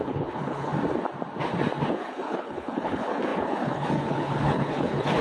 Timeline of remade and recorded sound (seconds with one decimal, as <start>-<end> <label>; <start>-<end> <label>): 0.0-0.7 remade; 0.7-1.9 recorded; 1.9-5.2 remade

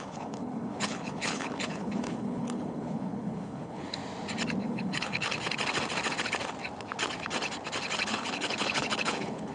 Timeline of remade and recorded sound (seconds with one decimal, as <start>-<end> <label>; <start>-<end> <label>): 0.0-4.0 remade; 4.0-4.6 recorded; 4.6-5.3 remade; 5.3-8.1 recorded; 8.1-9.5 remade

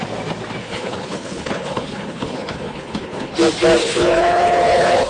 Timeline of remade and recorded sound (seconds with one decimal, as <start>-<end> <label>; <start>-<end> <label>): 0.0-0.6 recorded; 0.6-3.3 remade; 3.3-3.8 recorded; 3.8-5.1 remade

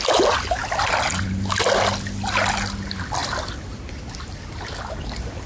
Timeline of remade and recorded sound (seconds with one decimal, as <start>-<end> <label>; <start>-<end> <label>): 0.0-5.5 recorded

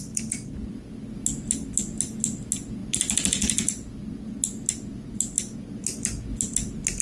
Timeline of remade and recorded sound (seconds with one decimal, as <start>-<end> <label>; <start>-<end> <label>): 0.0-7.0 recorded

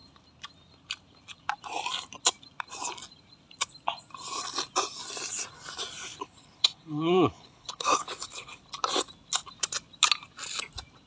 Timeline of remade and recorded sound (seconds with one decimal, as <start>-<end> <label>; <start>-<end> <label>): 0.0-6.1 recorded; 6.1-8.6 remade; 8.6-11.1 recorded

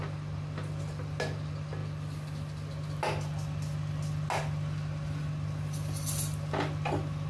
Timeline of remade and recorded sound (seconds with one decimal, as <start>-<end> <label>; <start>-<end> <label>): 0.0-7.3 recorded

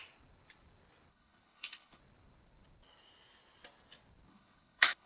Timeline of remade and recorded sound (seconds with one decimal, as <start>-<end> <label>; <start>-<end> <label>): 0.0-1.1 recorded; 1.1-2.0 remade; 2.0-4.3 recorded; 4.3-5.1 remade